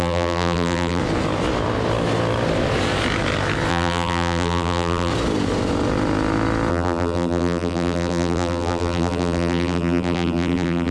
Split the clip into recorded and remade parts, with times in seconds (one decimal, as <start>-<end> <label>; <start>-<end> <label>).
0.0-1.0 remade; 1.0-3.7 recorded; 3.7-5.1 remade; 5.1-6.7 recorded; 6.7-10.9 remade